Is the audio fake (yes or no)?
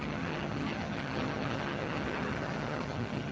yes